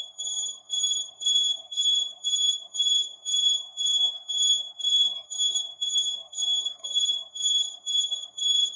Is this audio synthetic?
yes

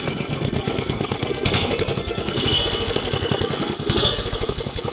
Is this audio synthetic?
yes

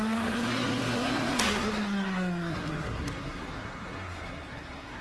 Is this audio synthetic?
yes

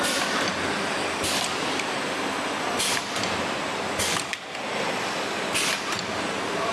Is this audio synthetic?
no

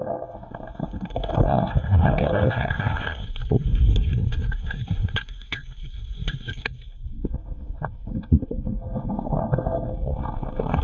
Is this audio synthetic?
yes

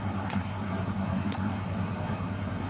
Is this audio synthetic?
yes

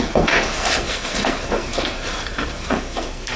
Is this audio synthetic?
yes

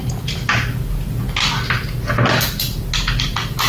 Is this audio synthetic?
no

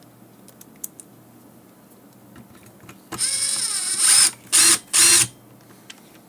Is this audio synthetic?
no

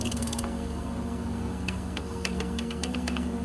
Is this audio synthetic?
yes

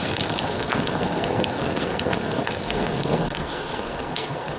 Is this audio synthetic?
yes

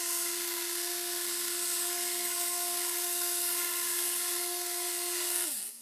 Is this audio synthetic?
yes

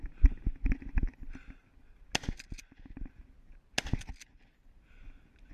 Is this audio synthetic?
no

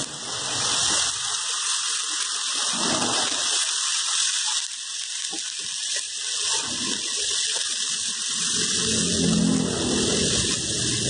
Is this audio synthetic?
no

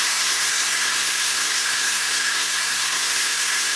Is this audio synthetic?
yes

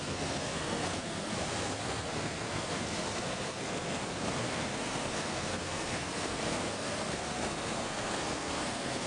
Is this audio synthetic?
yes